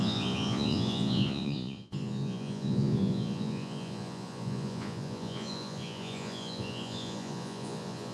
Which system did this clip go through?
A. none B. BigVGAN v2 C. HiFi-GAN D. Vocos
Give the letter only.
D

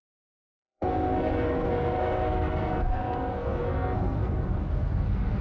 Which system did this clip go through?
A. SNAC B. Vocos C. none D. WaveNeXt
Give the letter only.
A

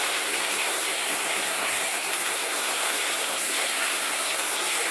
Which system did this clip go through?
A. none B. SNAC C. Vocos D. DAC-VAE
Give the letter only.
B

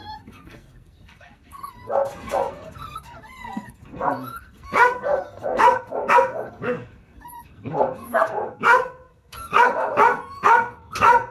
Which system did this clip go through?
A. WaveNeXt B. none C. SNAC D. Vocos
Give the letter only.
C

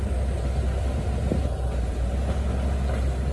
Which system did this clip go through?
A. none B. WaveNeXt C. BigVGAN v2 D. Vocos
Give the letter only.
A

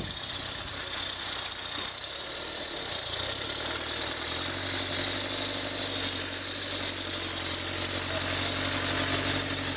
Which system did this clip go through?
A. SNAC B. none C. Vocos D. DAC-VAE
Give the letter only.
B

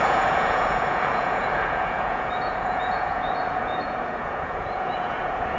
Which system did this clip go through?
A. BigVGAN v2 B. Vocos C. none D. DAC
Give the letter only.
B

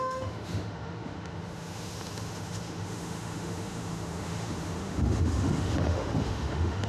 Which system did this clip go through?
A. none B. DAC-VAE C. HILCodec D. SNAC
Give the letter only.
B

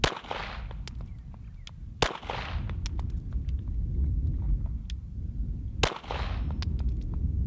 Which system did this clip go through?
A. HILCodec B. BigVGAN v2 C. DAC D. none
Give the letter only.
D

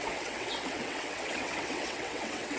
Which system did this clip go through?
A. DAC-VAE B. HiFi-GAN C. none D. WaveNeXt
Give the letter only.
D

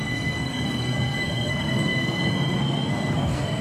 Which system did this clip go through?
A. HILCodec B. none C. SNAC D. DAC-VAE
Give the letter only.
C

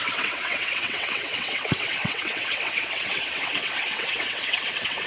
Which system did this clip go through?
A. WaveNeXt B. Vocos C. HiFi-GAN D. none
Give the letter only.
A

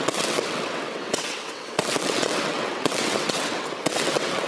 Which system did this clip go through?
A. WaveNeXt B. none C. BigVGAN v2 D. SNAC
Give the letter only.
A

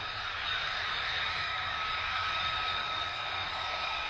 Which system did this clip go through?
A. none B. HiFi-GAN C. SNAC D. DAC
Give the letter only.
D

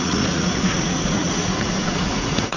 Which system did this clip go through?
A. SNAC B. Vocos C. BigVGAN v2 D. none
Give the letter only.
B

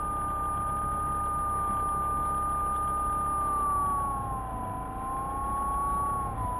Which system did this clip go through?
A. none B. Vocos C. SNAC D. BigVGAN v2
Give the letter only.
A